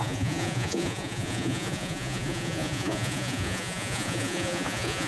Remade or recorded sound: remade